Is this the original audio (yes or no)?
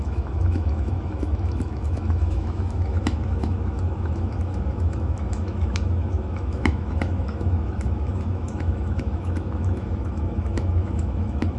no